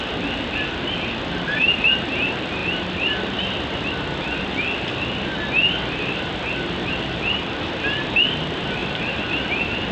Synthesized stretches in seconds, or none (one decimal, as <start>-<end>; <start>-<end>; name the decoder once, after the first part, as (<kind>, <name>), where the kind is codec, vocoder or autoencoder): 0.0-2.6 (vocoder, BigVGAN v2); 6.9-9.9